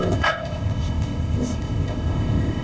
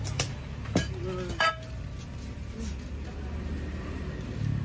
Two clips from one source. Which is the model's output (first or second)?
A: first